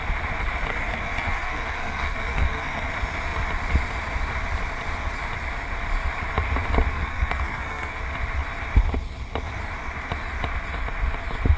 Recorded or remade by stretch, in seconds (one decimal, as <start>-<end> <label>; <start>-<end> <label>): 0.0-0.7 recorded; 0.7-2.9 remade; 2.9-6.9 recorded; 6.9-8.0 remade; 8.0-11.6 recorded